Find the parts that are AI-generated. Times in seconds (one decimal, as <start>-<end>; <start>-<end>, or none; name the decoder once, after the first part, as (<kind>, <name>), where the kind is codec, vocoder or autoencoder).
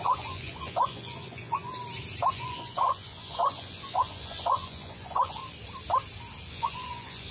0.0-1.7 (vocoder, Vocos); 2.3-5.4; 6.5-7.3